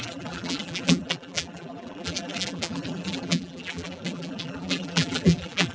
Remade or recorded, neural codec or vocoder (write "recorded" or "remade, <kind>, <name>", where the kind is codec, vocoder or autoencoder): remade, vocoder, BigVGAN v2